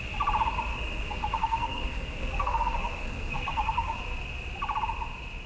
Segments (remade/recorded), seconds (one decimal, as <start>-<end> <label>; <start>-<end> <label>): 0.0-0.7 recorded; 0.7-4.0 remade; 4.0-5.5 recorded